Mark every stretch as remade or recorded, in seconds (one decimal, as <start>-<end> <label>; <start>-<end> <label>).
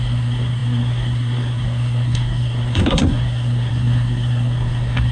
0.0-5.1 remade